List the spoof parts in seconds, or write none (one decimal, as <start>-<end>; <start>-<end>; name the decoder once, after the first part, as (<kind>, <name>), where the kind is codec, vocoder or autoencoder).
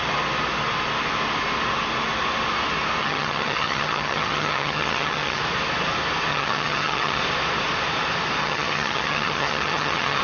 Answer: 3.0-5.4 (vocoder, HiFi-GAN); 6.3-7.2; 8.4-10.2